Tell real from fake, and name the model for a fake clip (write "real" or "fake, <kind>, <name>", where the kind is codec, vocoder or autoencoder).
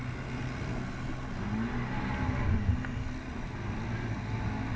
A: real